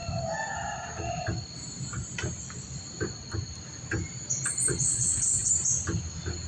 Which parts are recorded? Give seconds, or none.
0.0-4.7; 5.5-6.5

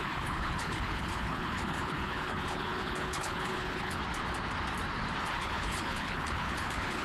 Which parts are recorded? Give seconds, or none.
4.0-5.2

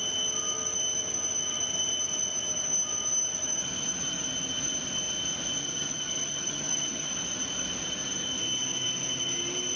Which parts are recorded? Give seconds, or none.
0.0-5.6; 7.1-9.8

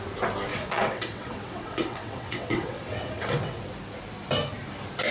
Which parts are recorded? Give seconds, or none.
0.0-0.5; 3.6-5.1

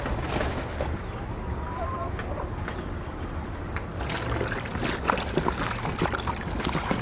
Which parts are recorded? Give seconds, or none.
0.0-7.0

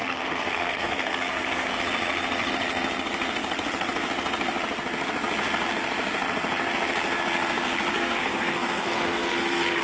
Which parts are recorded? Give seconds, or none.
1.8-7.9

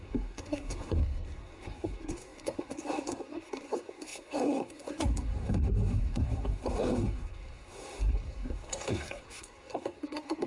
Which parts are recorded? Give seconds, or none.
none